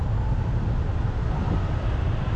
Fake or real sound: fake